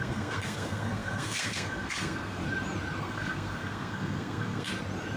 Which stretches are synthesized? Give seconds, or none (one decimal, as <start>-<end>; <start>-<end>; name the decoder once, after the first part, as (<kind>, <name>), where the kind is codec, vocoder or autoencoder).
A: 0.0-2.4 (codec, SNAC); 3.0-4.7